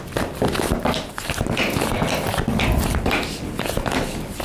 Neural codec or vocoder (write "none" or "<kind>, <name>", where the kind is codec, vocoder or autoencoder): none